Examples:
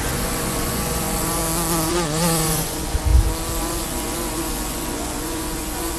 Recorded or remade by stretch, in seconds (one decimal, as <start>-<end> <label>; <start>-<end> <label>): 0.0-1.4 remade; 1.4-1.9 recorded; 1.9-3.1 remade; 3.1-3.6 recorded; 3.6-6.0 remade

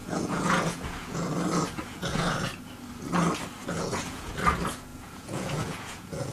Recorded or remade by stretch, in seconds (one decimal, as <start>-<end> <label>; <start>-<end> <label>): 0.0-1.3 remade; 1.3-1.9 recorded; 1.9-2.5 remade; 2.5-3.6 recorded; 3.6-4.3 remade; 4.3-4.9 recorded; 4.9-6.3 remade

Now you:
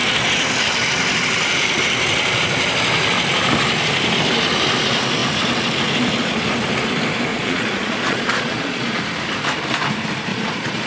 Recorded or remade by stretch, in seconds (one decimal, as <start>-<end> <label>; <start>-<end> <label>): 0.0-7.3 recorded; 7.3-9.0 remade; 9.0-10.3 recorded; 10.3-10.9 remade

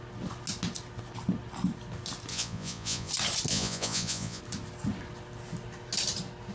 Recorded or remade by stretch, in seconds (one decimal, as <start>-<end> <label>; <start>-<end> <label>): 0.0-2.3 recorded; 2.3-3.1 remade; 3.1-3.5 recorded; 3.5-4.4 remade; 4.4-6.5 recorded

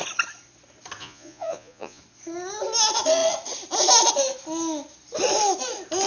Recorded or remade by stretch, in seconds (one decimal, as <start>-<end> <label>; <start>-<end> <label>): 0.0-1.0 recorded; 1.0-2.0 remade; 2.0-6.1 recorded

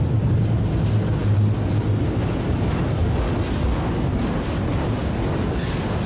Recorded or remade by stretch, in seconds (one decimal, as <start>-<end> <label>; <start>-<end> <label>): 0.0-6.1 recorded